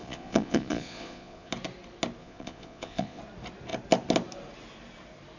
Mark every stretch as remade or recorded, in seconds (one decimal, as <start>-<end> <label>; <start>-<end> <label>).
0.0-1.5 remade; 1.5-2.2 recorded; 2.2-3.2 remade; 3.2-5.4 recorded

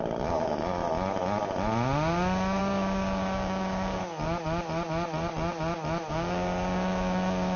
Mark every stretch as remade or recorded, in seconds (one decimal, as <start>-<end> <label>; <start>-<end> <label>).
0.0-0.8 remade; 0.8-2.6 recorded; 2.6-4.0 remade; 4.0-6.1 recorded; 6.1-7.6 remade

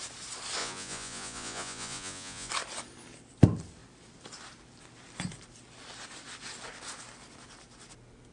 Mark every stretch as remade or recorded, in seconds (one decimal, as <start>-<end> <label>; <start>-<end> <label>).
0.0-0.6 recorded; 0.6-2.5 remade; 2.5-8.3 recorded

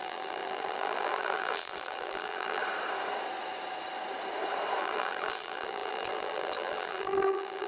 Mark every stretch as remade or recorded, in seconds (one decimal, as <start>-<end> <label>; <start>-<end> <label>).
0.0-2.6 remade; 2.6-4.8 recorded; 4.8-7.7 remade